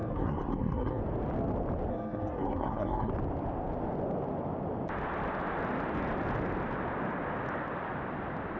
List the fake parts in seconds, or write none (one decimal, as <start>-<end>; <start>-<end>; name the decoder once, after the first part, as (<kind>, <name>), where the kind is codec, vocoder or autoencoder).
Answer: 0.0-1.0 (codec, SNAC); 1.9-3.1